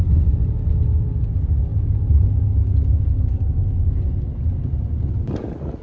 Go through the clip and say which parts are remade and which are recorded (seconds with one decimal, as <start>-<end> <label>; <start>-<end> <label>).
0.0-5.8 recorded